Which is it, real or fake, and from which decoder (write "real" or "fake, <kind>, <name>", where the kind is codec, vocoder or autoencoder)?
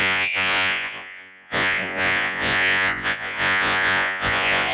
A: fake, vocoder, Vocos